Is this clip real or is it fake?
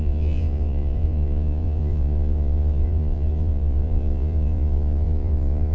fake